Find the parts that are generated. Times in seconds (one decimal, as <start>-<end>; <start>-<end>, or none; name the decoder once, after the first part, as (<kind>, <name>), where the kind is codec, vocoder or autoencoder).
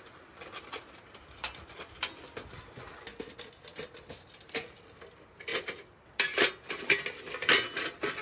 none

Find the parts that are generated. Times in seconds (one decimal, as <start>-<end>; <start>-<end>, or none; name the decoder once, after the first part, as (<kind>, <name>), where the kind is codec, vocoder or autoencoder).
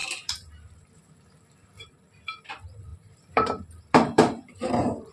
0.0-1.1 (vocoder, BigVGAN v2); 2.9-5.1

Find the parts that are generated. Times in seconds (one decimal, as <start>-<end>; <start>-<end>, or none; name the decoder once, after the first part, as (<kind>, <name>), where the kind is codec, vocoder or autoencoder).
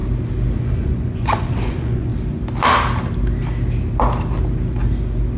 0.6-2.1 (vocoder, Vocos)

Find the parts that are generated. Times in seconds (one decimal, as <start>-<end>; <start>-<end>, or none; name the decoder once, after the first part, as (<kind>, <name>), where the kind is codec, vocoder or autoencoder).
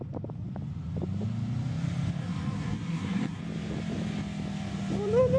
2.2-3.4 (codec, SNAC)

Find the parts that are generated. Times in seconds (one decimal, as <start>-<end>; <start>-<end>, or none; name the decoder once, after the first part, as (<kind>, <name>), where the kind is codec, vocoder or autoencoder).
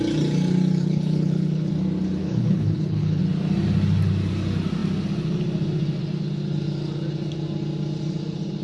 0.8-1.7 (codec, HILCodec); 2.2-3.2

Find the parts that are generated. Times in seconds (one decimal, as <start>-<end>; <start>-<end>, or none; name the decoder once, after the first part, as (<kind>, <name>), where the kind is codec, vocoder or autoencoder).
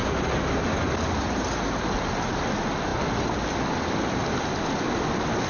none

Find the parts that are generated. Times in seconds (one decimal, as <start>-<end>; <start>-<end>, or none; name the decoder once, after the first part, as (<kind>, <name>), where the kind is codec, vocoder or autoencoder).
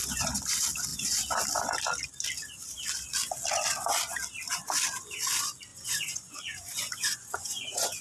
5.7-8.0 (vocoder, Vocos)